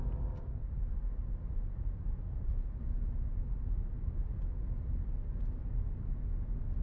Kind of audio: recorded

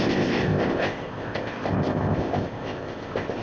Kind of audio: remade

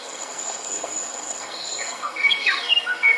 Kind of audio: remade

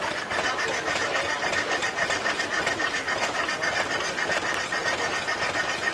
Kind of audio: recorded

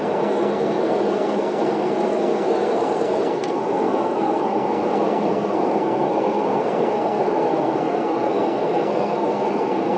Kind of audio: remade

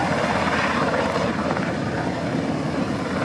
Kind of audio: recorded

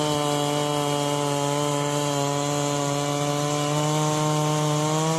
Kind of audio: recorded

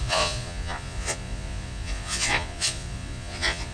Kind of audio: remade